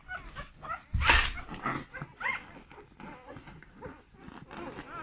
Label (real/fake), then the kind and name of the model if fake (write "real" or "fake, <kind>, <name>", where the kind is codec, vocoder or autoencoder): real